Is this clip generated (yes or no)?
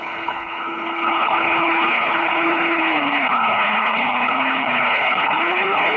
yes